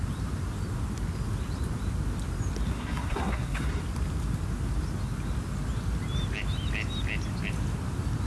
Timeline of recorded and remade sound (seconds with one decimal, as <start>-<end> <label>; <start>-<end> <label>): 0.0-2.7 recorded; 2.7-3.8 remade; 3.8-8.3 recorded